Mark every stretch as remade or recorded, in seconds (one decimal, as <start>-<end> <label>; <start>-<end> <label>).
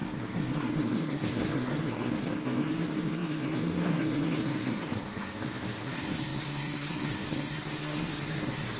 0.0-8.8 remade